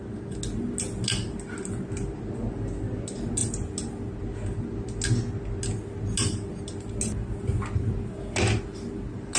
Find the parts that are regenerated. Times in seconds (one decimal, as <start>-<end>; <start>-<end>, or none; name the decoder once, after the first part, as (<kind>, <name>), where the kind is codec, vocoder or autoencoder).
none